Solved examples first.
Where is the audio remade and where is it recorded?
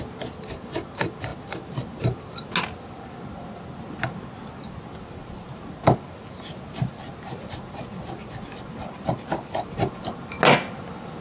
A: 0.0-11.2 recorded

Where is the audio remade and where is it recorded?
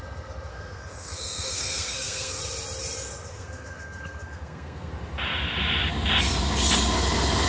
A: 0.0-0.5 recorded; 0.5-2.4 remade; 2.4-3.3 recorded; 3.3-4.9 remade; 4.9-7.5 recorded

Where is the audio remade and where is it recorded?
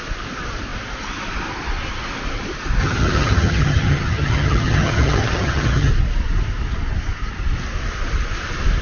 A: 0.0-2.8 recorded; 2.8-5.9 remade; 5.9-8.8 recorded